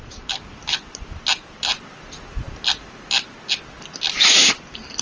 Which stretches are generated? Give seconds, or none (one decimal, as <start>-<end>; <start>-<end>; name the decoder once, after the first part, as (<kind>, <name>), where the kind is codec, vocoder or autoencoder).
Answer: none